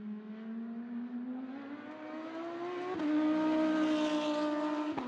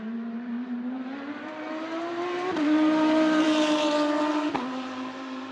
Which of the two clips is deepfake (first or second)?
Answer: second